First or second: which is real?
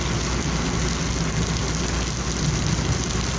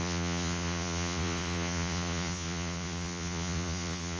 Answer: first